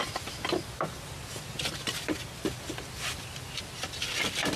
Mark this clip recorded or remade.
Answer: recorded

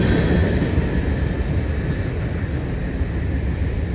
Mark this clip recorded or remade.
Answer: recorded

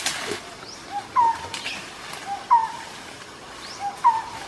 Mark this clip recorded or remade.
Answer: recorded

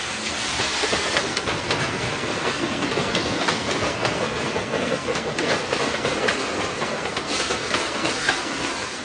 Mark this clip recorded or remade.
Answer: remade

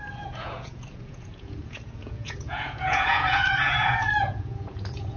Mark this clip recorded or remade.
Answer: remade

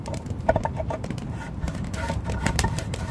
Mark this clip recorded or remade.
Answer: remade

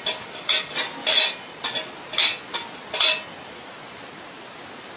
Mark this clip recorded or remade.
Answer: recorded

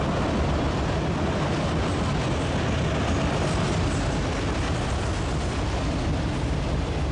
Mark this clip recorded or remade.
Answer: recorded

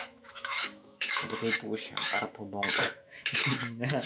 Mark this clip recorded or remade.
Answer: remade